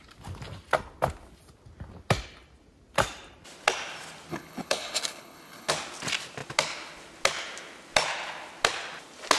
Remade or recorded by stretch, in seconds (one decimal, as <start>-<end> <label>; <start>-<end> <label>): 0.0-4.3 recorded; 4.3-5.7 remade; 5.7-9.4 recorded